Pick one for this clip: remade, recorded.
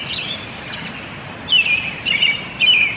recorded